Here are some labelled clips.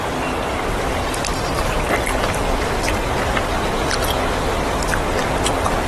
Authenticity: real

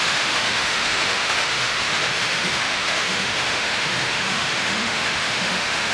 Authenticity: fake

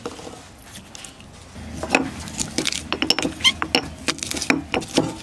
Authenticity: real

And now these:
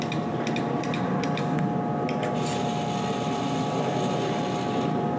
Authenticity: real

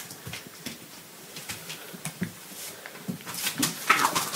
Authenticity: fake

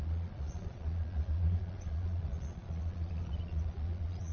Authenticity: fake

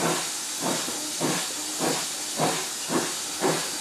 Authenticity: real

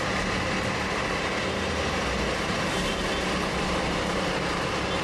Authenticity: real